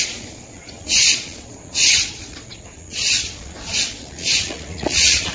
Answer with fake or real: fake